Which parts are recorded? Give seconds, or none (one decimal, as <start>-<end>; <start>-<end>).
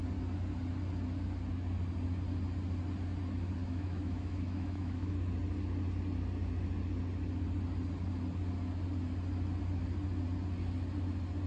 0.0-3.6; 5.1-11.5